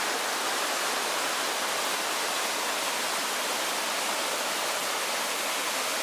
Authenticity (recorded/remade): recorded